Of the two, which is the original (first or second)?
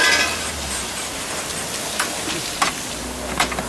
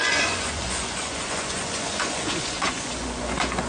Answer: first